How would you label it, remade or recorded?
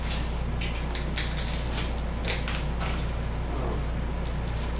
recorded